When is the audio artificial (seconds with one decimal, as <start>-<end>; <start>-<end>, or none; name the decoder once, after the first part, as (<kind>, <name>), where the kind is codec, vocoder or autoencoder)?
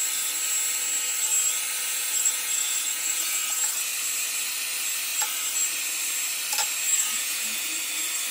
1.9-3.7 (vocoder, Vocos); 6.9-7.7